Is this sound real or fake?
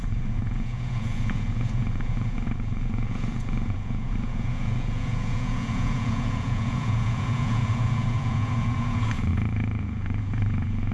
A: fake